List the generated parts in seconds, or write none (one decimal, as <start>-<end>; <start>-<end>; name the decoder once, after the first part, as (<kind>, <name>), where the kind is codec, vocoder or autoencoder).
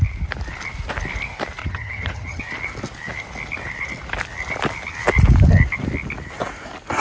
1.6-2.4 (vocoder, HiFi-GAN)